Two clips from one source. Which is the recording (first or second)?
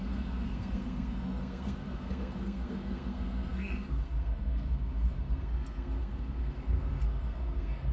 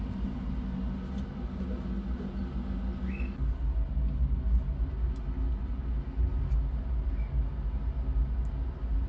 second